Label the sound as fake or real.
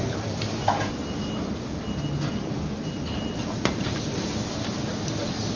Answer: real